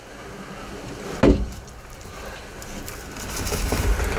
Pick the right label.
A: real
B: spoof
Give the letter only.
A